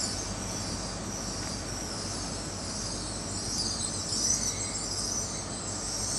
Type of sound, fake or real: real